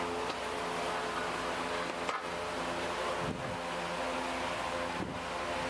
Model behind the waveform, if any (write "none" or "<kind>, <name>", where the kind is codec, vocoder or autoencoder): none